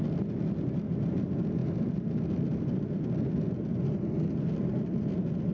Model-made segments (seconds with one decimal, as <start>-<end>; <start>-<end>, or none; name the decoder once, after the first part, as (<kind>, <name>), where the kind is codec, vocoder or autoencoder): 1.6-3.8 (vocoder, BigVGAN v2)